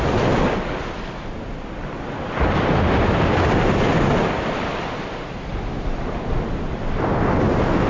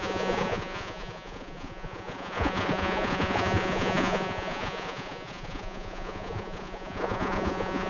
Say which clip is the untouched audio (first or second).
first